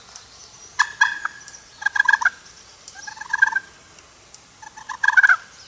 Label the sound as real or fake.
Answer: real